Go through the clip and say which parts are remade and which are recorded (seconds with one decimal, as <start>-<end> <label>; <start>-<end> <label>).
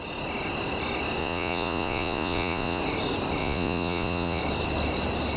0.0-1.2 recorded; 1.2-2.8 remade; 2.8-3.4 recorded; 3.4-4.4 remade; 4.4-5.4 recorded